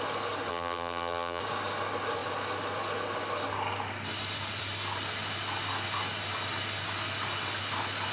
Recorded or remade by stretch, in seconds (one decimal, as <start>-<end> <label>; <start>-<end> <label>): 0.0-0.5 recorded; 0.5-1.4 remade; 1.4-8.1 recorded